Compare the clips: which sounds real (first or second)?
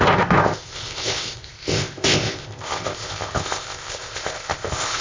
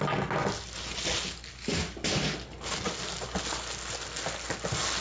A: second